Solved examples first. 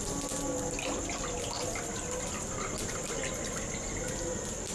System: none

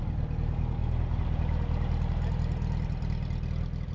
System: none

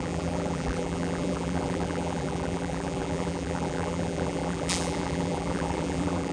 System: vocoder, BigVGAN v2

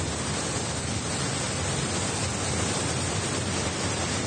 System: none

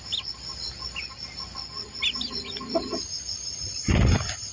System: none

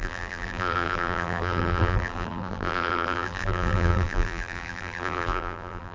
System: vocoder, BigVGAN v2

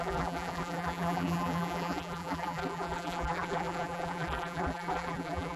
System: vocoder, BigVGAN v2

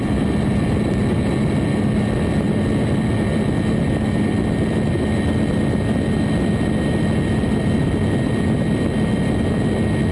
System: none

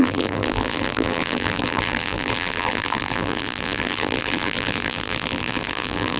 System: vocoder, BigVGAN v2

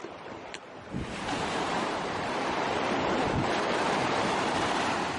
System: vocoder, BigVGAN v2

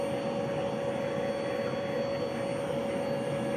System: none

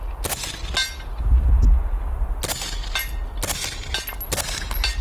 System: none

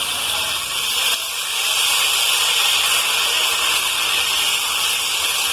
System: none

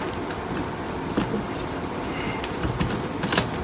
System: none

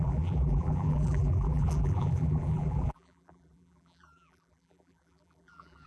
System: vocoder, BigVGAN v2